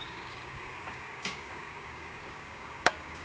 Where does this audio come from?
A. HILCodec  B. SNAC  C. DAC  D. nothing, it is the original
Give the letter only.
C